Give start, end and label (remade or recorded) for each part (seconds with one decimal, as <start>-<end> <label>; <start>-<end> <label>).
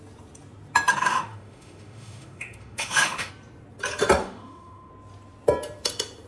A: 0.0-0.9 recorded; 0.9-3.3 remade; 3.3-4.2 recorded; 4.2-4.9 remade; 4.9-6.3 recorded